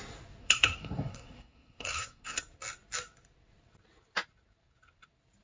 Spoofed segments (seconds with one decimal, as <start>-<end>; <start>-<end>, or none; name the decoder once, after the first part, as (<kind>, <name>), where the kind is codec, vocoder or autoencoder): 0.4-2.4 (codec, SNAC)